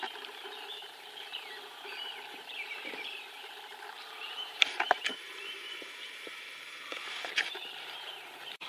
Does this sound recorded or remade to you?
remade